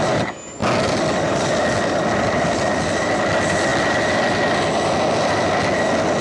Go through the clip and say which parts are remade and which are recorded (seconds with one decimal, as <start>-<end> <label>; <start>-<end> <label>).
0.0-6.2 recorded